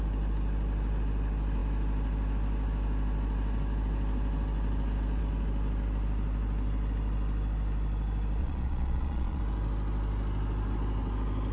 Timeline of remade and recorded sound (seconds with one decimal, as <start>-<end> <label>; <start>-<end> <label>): 0.0-8.4 recorded; 8.4-9.4 remade; 9.4-11.5 recorded